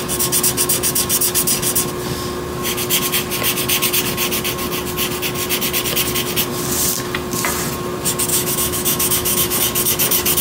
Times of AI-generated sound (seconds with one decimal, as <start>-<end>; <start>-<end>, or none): 8.3-9.6